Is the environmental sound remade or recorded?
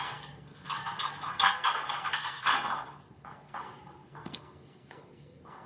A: remade